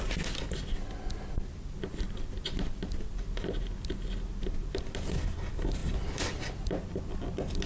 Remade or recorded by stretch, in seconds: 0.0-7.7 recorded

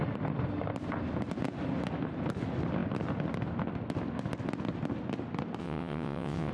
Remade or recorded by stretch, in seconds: 0.0-5.6 recorded; 5.6-6.5 remade

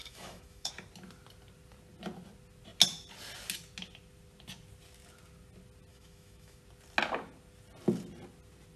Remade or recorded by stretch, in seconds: 0.0-0.7 remade; 0.7-5.9 recorded; 5.9-6.6 remade; 6.6-8.8 recorded

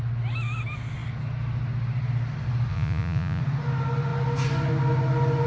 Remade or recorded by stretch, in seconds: 0.0-2.7 recorded; 2.7-3.4 remade; 3.4-5.5 recorded

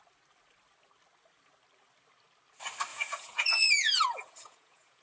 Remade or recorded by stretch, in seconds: 0.0-2.9 recorded; 2.9-5.0 remade